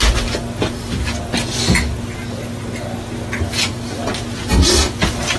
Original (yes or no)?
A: yes